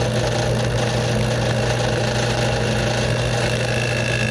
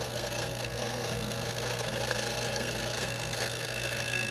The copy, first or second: second